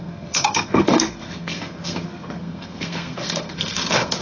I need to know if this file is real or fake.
fake